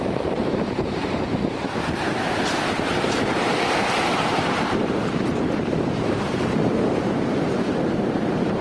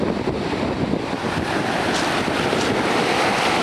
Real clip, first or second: second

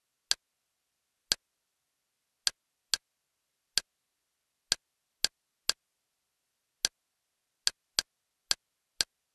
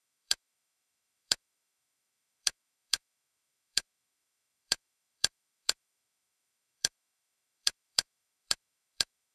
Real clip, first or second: first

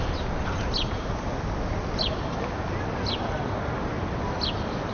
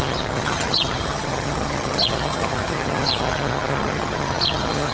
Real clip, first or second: first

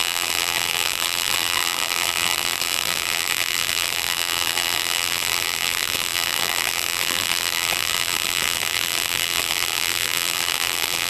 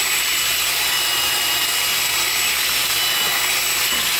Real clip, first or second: second